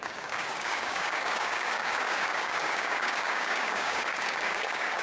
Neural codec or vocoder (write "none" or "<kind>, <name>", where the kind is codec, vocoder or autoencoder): codec, DAC